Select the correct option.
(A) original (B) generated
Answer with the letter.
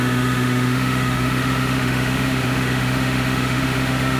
B